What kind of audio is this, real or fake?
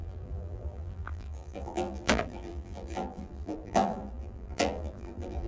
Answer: fake